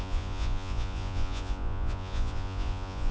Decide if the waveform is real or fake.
fake